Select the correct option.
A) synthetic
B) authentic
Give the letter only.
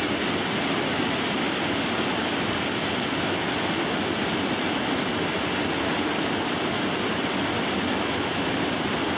B